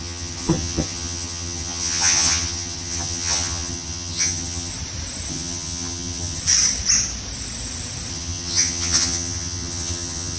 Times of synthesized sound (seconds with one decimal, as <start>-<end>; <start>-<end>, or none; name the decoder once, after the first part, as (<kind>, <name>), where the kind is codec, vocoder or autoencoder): 0.0-4.7 (vocoder, HiFi-GAN); 5.3-6.4; 8.1-10.4